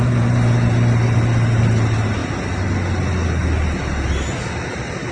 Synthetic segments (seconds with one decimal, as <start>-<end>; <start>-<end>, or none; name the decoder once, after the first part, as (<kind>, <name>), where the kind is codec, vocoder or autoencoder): none